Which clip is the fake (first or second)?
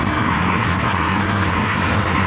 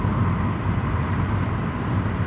first